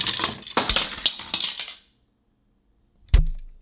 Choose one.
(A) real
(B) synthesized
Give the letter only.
A